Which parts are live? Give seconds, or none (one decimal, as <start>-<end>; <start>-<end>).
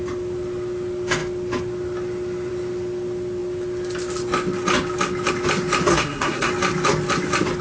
0.0-5.9; 6.5-7.6